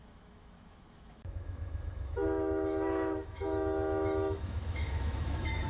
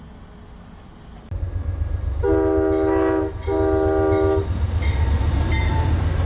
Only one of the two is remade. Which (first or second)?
first